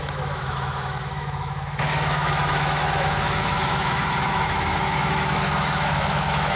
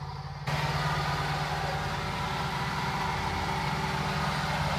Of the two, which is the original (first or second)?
second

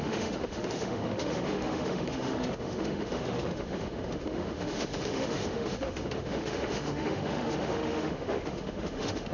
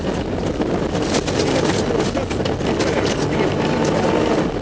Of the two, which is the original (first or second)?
second